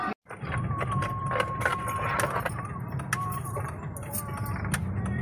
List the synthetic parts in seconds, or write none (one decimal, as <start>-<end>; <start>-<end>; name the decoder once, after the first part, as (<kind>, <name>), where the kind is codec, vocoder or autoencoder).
none